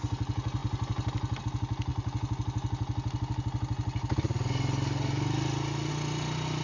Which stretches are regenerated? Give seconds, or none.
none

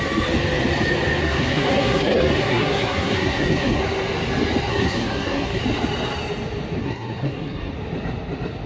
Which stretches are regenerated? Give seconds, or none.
1.2-3.8; 4.7-5.6; 6.8-7.7

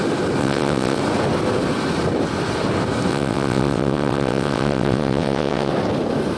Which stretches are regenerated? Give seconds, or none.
0.4-1.0; 3.1-5.7

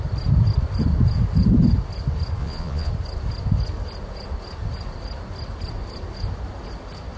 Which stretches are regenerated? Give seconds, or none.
2.4-2.9